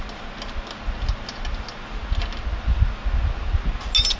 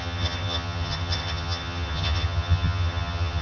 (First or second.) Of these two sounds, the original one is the first